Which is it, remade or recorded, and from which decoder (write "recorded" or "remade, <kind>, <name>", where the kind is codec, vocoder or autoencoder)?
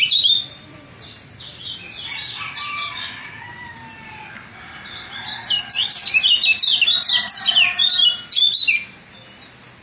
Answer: recorded